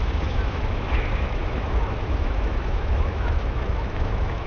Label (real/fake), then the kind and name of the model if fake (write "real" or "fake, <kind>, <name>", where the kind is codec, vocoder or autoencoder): fake, autoencoder, DAC-VAE